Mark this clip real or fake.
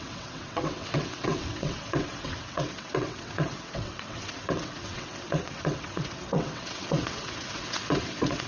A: fake